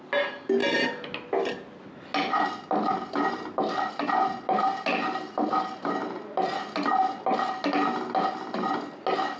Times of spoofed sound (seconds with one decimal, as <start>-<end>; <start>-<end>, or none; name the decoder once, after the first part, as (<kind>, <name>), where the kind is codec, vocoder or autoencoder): none